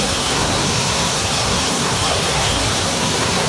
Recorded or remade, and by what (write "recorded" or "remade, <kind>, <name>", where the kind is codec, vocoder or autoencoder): remade, codec, SNAC